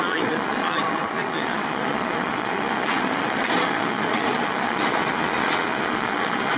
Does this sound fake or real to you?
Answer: fake